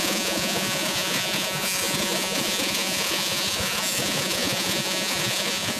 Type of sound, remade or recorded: remade